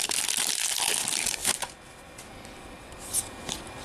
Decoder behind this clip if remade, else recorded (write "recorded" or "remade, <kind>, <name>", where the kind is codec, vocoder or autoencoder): recorded